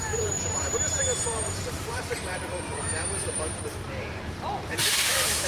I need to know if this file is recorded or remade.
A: remade